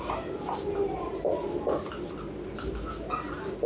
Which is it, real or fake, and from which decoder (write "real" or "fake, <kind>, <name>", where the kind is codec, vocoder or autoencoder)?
real